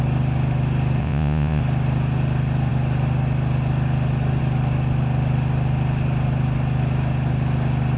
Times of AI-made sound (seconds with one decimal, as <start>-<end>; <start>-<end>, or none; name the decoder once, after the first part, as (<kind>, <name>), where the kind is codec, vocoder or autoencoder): 1.0-1.6 (vocoder, Vocos)